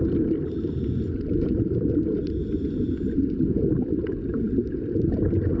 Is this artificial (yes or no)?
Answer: yes